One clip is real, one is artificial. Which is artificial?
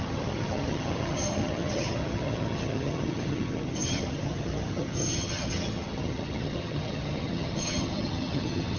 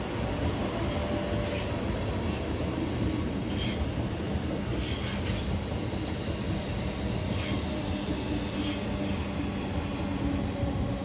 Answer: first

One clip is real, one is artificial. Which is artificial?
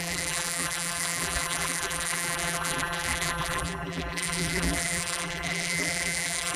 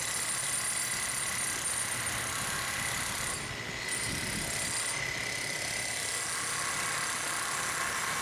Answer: first